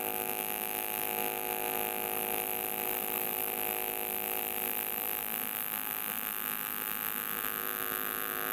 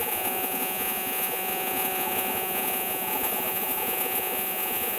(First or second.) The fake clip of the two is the second